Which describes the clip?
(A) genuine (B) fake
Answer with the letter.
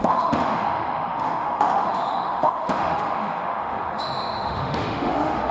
B